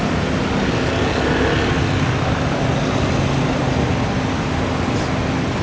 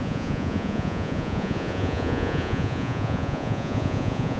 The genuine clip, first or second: first